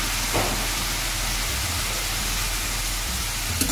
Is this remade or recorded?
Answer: recorded